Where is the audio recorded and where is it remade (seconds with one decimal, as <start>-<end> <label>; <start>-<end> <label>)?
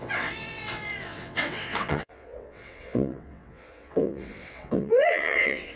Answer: 0.0-5.8 remade